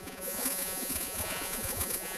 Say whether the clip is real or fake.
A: fake